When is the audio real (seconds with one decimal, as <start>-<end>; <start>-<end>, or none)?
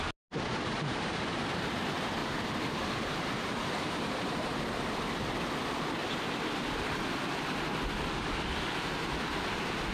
0.0-2.2; 5.4-9.9